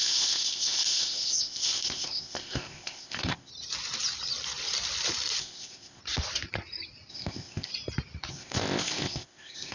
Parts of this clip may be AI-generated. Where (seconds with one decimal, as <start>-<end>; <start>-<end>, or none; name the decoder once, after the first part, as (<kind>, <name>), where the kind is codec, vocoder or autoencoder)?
0.0-3.5 (codec, ZipCodec); 5.4-6.0; 7.1-7.7; 8.3-9.7